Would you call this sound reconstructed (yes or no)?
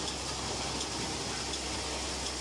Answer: no